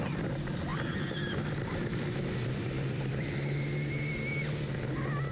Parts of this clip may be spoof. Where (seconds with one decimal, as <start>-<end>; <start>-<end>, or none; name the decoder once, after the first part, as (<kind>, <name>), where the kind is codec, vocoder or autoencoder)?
0.7-3.6 (vocoder, BigVGAN v2)